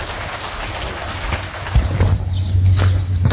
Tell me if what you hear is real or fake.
real